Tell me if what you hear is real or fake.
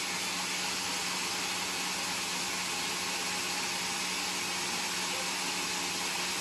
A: real